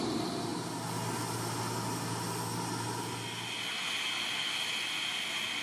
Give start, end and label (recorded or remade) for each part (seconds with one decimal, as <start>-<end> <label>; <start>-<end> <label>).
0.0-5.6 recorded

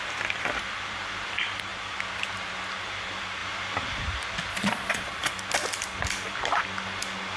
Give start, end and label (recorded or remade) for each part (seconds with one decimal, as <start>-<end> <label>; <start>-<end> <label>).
0.0-4.5 recorded; 4.5-5.2 remade; 5.2-7.4 recorded

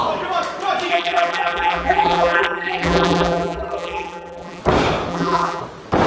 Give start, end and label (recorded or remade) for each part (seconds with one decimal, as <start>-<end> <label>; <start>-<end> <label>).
0.0-0.9 recorded; 0.9-4.6 remade; 4.6-5.1 recorded; 5.1-5.6 remade; 5.6-6.1 recorded

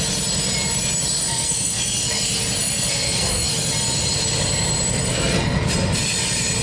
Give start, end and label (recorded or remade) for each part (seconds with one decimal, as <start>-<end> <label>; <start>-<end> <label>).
0.0-1.3 recorded; 1.3-2.2 remade; 2.2-2.6 recorded; 2.6-3.5 remade; 3.5-5.1 recorded; 5.1-5.6 remade; 5.6-6.6 recorded

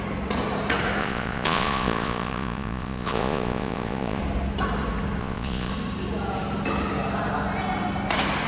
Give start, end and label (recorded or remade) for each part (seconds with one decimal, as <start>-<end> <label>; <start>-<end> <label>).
0.0-1.0 recorded; 1.0-4.2 remade; 4.2-5.2 recorded; 5.2-5.7 remade; 5.7-8.5 recorded

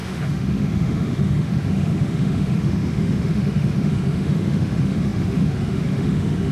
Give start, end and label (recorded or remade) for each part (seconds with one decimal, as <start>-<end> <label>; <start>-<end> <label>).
0.0-6.5 remade

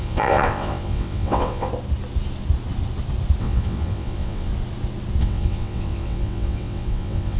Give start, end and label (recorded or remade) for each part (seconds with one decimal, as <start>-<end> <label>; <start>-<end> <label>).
0.0-1.7 remade; 1.7-3.4 recorded; 3.4-4.5 remade; 4.5-5.2 recorded; 5.2-7.4 remade

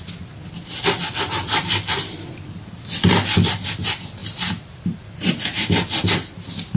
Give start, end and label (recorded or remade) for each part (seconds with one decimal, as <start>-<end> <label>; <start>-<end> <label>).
0.0-6.8 recorded